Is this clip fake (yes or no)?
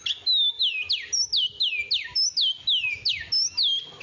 no